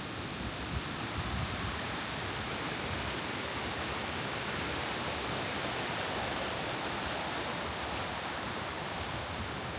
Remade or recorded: remade